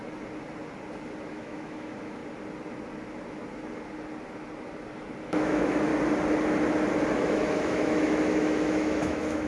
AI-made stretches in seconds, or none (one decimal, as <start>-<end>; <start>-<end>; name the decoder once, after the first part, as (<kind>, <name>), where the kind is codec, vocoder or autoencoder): 1.3-2.2 (autoencoder, DAC-VAE); 5.2-5.9; 7.1-9.5